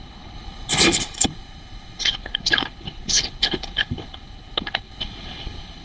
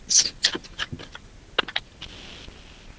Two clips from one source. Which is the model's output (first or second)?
first